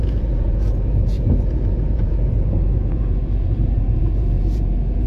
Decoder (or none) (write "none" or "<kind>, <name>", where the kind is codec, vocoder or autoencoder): vocoder, Vocos